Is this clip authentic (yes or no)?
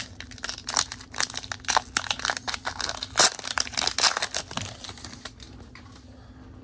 yes